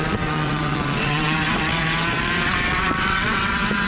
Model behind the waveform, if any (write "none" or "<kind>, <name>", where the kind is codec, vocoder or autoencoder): vocoder, WaveNeXt